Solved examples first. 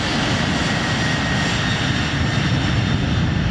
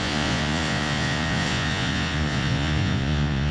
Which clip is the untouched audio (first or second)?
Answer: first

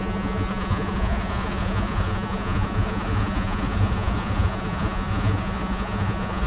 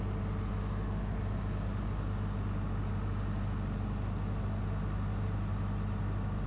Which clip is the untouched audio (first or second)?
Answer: second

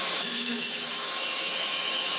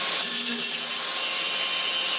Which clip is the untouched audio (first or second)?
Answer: second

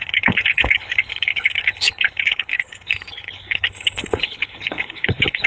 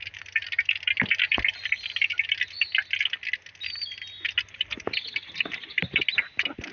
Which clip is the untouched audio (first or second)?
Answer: second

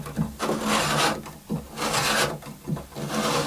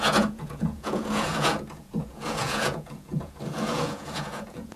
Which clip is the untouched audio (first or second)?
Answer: first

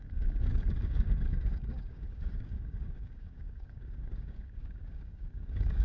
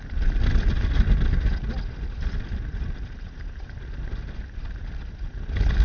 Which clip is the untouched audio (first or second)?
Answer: second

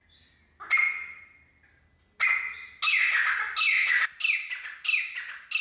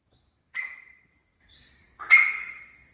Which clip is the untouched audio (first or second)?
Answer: first